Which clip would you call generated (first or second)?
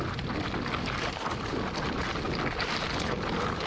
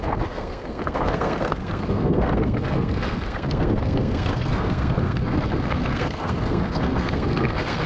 second